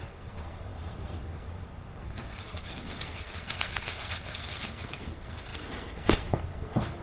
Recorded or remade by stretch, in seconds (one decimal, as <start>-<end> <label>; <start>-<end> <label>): 0.0-7.0 remade